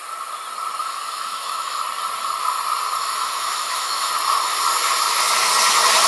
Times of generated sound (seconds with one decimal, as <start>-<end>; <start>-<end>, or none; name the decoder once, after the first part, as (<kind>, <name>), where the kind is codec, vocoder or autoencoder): 0.8-1.8 (autoencoder, DAC-VAE); 3.0-4.1